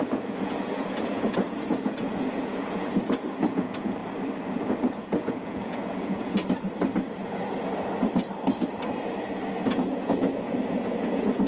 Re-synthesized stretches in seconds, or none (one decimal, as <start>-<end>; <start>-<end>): 0.0-4.0; 5.0-6.4; 9.7-11.5